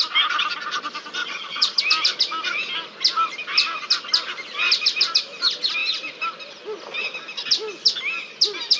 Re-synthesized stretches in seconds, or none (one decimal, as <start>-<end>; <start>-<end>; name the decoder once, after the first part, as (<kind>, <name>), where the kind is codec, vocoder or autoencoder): 1.2-1.8 (vocoder, HiFi-GAN)